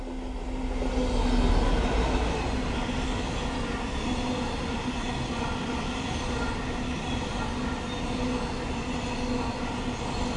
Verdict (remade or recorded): recorded